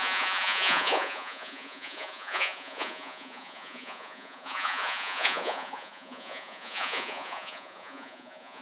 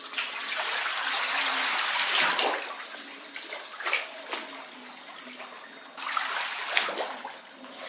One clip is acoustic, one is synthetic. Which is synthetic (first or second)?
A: first